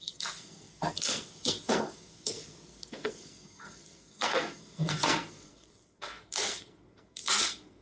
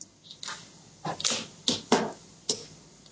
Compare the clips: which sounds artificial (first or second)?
first